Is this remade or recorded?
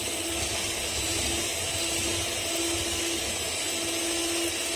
recorded